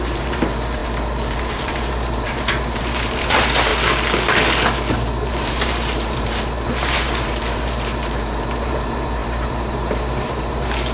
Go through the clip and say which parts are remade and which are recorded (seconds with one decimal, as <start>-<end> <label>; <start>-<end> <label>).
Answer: 0.0-3.7 remade; 3.7-5.3 recorded; 5.3-10.9 remade